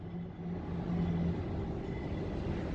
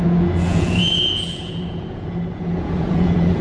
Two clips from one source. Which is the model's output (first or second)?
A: second